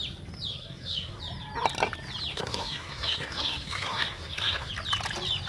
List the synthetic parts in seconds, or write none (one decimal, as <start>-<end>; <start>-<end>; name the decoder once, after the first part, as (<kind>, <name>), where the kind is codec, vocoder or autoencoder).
0.5-1.2 (codec, SNAC); 2.3-4.7